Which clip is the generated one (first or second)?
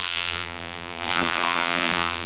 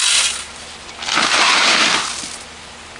first